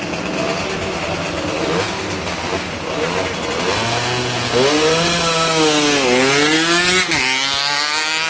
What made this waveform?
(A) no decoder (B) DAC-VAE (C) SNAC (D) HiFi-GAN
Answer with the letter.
A